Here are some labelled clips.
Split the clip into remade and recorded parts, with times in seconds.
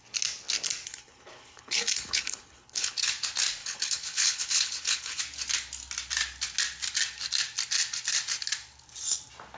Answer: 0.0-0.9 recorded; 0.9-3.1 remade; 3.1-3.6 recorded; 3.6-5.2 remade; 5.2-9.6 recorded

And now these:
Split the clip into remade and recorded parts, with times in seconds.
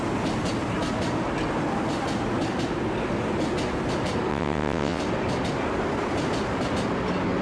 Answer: 0.0-4.3 recorded; 4.3-5.0 remade; 5.0-7.4 recorded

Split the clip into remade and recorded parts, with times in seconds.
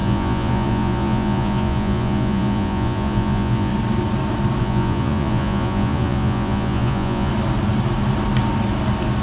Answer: 0.0-3.7 remade; 3.7-4.6 recorded; 4.6-7.3 remade; 7.3-9.2 recorded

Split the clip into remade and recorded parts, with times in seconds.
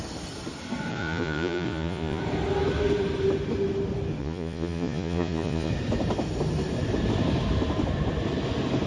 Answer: 0.0-0.9 recorded; 0.9-2.2 remade; 2.2-4.2 recorded; 4.2-5.7 remade; 5.7-8.9 recorded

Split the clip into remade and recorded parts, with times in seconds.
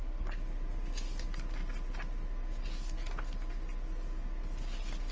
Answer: 0.0-5.1 recorded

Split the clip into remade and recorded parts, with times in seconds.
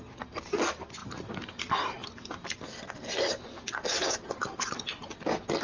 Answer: 0.0-5.6 recorded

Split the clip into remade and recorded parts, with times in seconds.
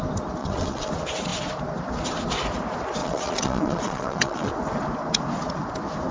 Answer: 0.0-0.4 recorded; 0.4-0.9 remade; 0.9-3.0 recorded; 3.0-4.5 remade; 4.5-6.1 recorded